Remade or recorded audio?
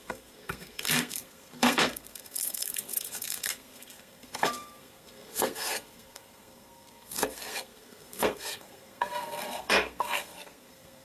remade